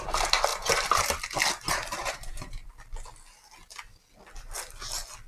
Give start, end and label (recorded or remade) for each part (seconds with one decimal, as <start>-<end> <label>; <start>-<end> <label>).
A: 0.0-0.5 recorded; 0.5-1.2 remade; 1.2-2.0 recorded; 2.0-2.7 remade; 2.7-5.3 recorded